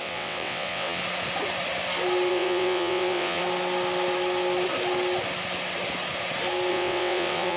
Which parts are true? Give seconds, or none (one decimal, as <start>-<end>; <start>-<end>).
1.0-2.3; 3.4-6.7